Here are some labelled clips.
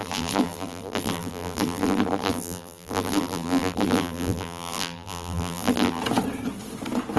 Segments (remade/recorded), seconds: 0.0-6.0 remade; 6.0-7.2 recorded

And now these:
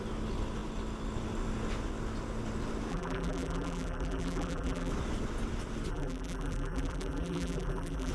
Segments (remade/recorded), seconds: 0.0-2.9 recorded; 2.9-4.9 remade; 4.9-5.9 recorded; 5.9-8.1 remade